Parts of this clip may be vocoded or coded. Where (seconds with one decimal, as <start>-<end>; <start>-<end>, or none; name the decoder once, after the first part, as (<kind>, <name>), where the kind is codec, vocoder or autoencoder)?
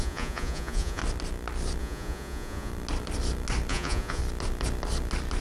0.0-1.0 (vocoder, Vocos); 1.8-2.7; 3.7-4.2